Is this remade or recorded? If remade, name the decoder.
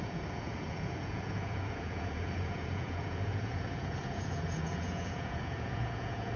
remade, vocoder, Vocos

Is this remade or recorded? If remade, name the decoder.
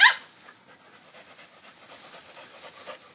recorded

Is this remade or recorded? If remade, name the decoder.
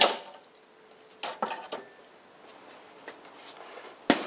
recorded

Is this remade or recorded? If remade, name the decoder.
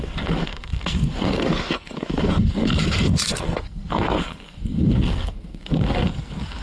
remade, codec, SNAC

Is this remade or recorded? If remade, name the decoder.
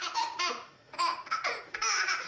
remade, vocoder, Vocos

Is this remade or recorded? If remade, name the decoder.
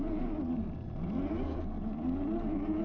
recorded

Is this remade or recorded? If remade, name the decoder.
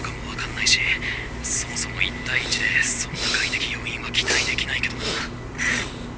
recorded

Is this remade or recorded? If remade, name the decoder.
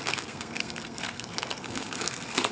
remade, codec, SNAC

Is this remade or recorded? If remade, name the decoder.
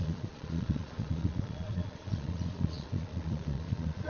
remade, vocoder, Vocos